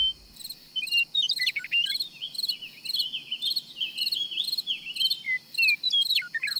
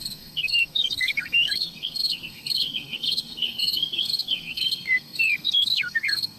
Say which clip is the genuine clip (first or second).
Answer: first